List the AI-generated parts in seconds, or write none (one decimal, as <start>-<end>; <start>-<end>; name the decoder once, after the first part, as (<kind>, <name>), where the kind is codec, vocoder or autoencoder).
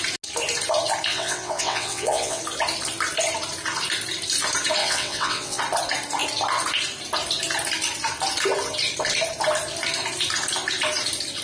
1.1-2.4 (vocoder, WaveNeXt); 4.8-5.6